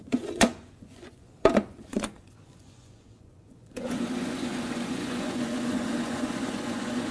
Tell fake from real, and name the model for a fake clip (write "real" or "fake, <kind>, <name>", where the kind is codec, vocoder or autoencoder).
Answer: fake, vocoder, Vocos